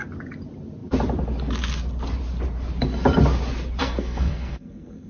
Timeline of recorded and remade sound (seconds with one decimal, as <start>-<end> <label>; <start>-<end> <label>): 0.0-3.8 recorded; 3.8-5.1 remade